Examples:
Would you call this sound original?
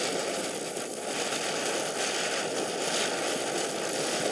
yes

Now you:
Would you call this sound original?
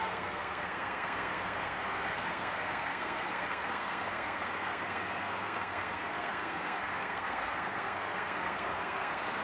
no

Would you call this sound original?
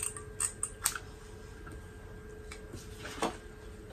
yes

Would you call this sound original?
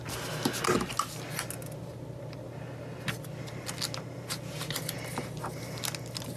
yes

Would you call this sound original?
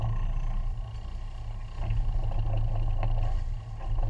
yes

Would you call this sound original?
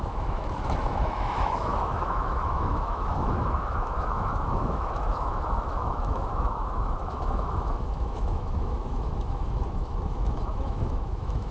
no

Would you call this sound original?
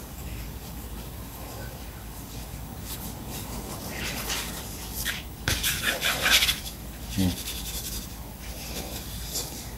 no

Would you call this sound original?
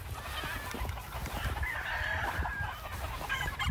no